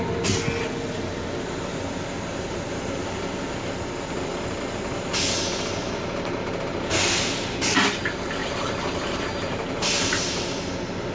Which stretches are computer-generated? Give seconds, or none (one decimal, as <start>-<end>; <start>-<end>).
8.4-10.4